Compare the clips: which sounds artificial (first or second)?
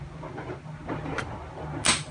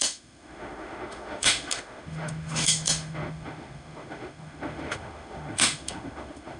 second